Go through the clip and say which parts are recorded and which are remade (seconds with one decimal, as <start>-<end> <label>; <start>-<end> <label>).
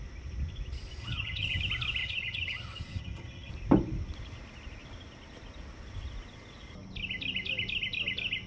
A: 0.0-1.0 recorded; 1.0-1.6 remade; 1.6-2.0 recorded; 2.0-3.5 remade; 3.5-8.5 recorded